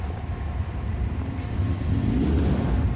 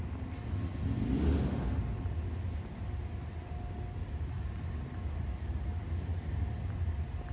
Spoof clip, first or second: first